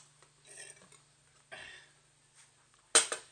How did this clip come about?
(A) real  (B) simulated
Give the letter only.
A